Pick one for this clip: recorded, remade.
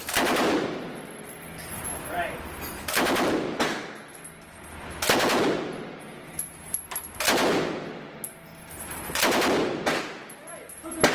recorded